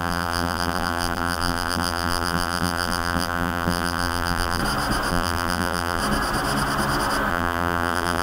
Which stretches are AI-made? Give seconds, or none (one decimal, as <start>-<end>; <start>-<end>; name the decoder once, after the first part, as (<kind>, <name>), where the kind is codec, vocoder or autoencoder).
0.0-4.6 (vocoder, BigVGAN v2); 5.1-6.0; 7.3-8.2